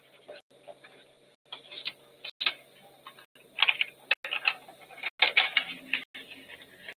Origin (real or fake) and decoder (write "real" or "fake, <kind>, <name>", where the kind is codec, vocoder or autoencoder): real